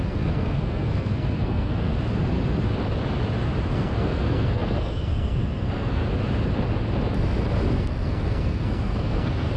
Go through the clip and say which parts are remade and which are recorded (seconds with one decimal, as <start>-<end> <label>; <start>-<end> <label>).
0.0-1.9 remade; 1.9-3.7 recorded; 3.7-6.0 remade; 6.0-7.7 recorded; 7.7-9.6 remade